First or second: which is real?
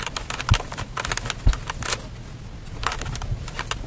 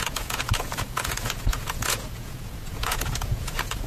first